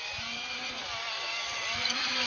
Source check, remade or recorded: remade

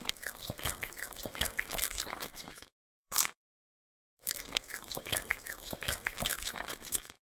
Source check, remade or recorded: remade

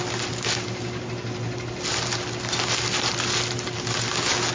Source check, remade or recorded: recorded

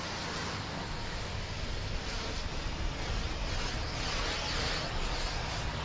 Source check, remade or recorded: recorded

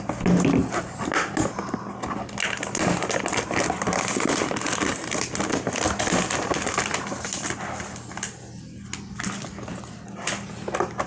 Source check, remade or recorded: recorded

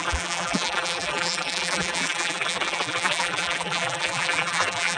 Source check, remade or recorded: remade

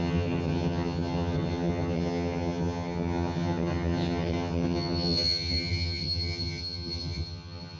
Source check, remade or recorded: remade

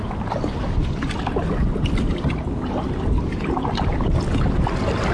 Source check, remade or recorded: recorded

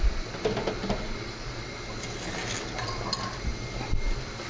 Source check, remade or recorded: recorded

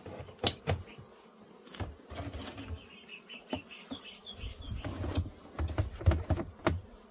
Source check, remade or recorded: recorded